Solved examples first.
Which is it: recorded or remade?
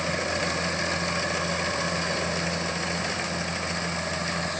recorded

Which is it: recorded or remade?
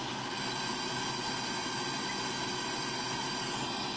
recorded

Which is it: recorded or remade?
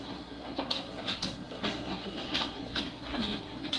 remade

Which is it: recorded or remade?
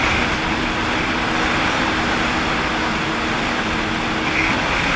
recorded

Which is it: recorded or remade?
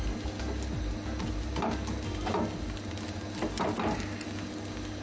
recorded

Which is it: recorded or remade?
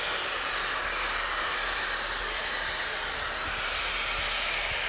recorded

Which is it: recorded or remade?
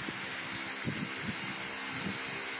recorded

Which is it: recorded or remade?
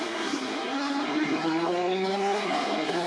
remade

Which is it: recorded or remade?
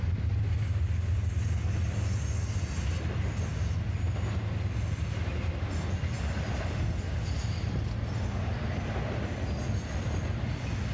recorded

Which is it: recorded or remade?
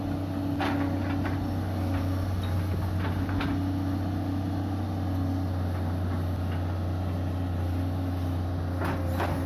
recorded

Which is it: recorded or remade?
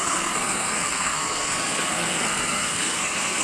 remade